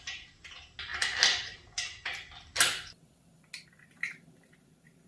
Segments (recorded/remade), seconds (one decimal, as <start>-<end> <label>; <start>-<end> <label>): 0.0-5.1 recorded